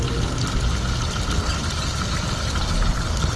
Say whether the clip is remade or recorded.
recorded